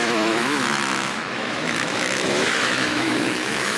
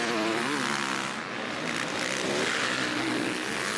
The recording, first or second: second